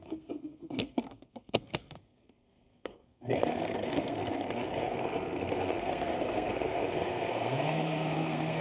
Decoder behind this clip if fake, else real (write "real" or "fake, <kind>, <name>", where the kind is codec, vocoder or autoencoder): fake, codec, SNAC